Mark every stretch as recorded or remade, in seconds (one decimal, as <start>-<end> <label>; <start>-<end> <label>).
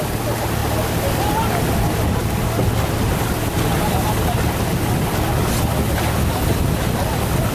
0.0-7.5 recorded